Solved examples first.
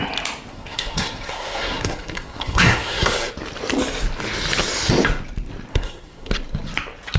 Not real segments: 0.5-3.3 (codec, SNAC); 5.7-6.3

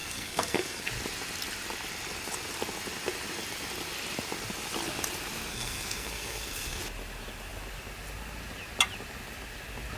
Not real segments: 0.0-0.9 (codec, SNAC); 5.5-6.8

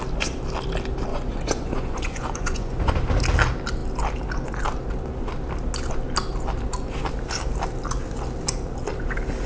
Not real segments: 1.1-2.9 (vocoder, Vocos)

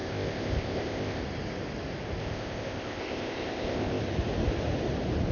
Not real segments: 0.0-1.2 (codec, ZipCodec); 2.2-4.0

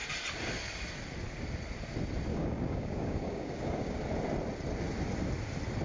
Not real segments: 2.3-4.0 (codec, DAC)

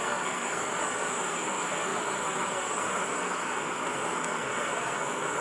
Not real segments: 0.0-5.4 (codec, SNAC)